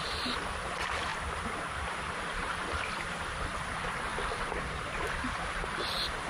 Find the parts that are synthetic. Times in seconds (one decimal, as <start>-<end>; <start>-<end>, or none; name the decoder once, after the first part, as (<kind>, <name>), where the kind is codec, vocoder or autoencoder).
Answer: 0.0-1.1 (vocoder, BigVGAN v2); 1.7-4.1; 4.7-6.3